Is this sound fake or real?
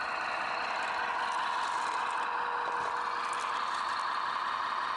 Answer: real